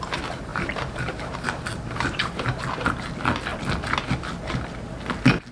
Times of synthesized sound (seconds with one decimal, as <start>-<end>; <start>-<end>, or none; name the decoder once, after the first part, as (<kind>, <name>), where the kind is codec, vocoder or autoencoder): 0.5-2.6 (vocoder, BigVGAN v2)